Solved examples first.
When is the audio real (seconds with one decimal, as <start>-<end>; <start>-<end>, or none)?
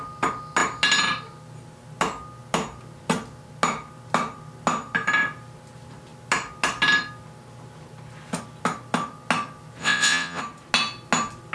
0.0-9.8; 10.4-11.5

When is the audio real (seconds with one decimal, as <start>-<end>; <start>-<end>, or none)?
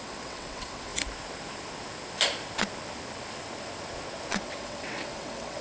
0.9-4.3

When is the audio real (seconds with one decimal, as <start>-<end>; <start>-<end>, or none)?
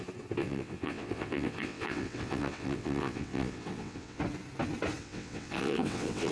0.0-0.4; 4.2-5.0